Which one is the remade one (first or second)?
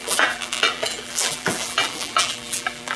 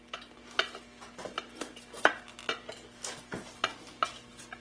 first